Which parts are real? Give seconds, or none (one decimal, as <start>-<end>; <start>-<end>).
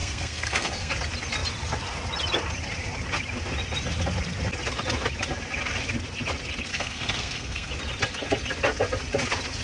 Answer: 0.9-6.7; 7.7-9.6